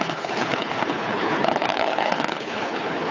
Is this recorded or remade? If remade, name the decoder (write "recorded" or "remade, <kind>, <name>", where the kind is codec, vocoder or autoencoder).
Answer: remade, codec, HILCodec